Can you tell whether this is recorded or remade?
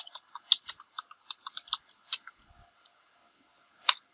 recorded